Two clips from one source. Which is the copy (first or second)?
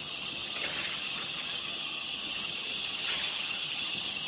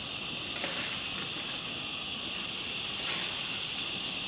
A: first